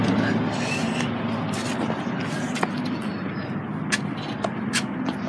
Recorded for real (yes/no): yes